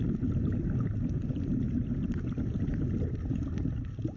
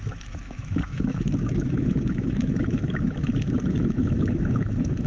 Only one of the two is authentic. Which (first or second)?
first